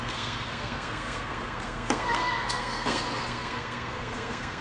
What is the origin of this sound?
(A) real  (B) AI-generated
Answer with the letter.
B